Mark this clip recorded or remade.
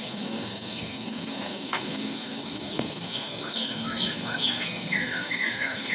remade